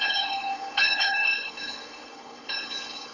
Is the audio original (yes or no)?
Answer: no